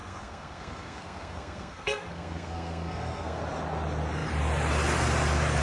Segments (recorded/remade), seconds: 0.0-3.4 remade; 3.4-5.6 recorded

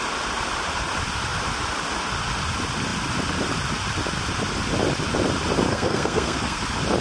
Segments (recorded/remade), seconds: 0.0-5.7 recorded; 5.7-6.6 remade; 6.6-7.0 recorded

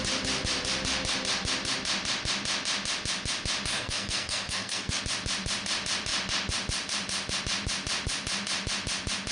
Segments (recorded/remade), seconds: 0.0-3.7 recorded; 3.7-5.0 remade; 5.0-9.3 recorded

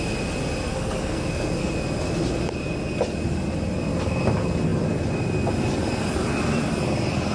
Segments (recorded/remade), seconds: 0.0-0.7 recorded; 0.7-1.7 remade; 1.7-7.3 recorded

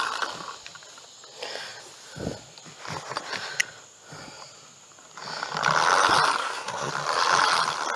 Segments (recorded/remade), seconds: 0.0-6.4 recorded; 6.4-6.9 remade; 6.9-8.0 recorded

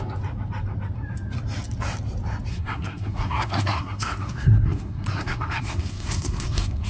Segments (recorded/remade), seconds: 0.0-2.5 recorded; 2.5-6.9 remade

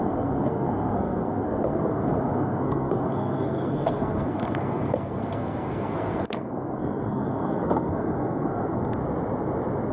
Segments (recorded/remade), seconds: 0.0-9.0 remade; 9.0-9.9 recorded